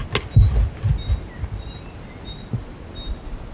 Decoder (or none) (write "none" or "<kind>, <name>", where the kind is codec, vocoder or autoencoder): none